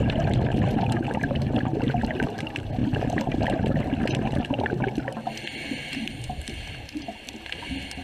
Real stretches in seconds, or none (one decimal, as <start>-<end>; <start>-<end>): 0.0-8.0